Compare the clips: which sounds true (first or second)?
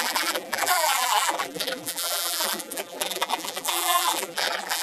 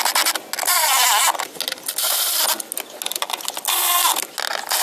second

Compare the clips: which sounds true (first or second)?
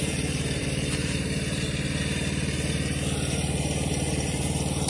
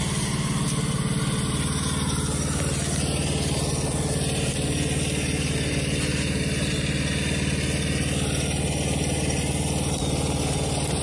second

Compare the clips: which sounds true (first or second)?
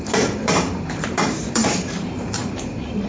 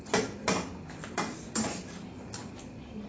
second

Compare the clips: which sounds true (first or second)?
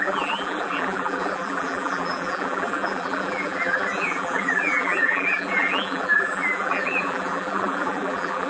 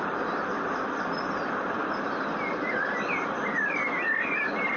second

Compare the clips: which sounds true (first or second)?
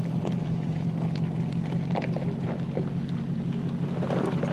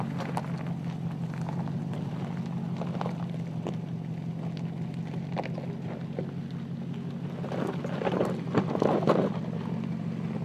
second